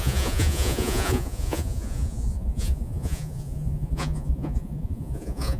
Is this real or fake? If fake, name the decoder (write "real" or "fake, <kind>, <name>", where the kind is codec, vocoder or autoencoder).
fake, vocoder, Vocos